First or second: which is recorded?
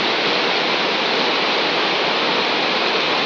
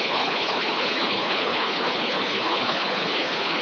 first